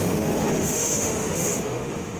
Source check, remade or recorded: remade